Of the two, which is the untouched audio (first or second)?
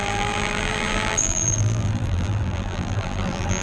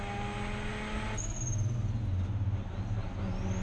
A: second